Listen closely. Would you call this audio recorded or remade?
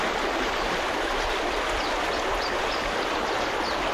recorded